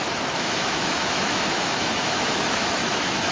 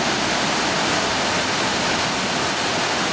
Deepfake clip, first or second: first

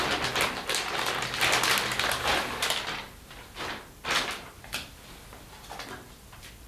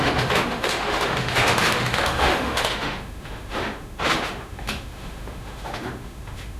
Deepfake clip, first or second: second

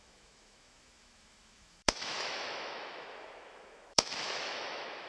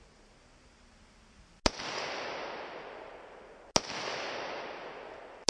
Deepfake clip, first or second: first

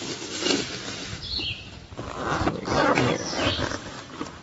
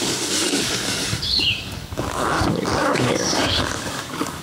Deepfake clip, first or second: second